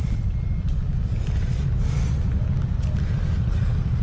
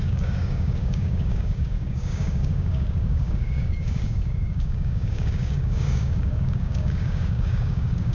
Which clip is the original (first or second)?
first